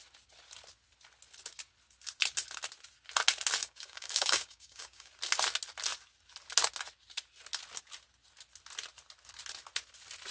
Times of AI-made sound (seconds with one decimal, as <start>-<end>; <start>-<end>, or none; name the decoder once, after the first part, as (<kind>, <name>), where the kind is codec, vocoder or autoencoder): 3.6-5.1 (codec, DAC)